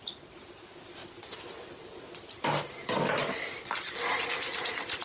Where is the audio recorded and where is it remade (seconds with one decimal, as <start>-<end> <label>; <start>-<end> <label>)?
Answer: 0.0-5.0 recorded